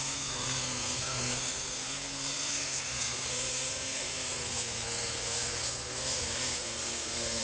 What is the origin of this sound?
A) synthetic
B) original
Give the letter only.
A